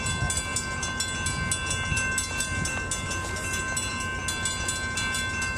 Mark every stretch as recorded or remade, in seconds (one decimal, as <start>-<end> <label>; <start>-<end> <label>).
0.0-5.6 recorded